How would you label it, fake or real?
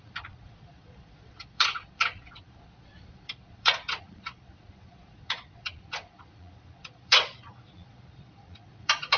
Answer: fake